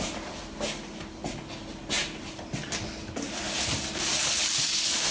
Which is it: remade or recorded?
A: recorded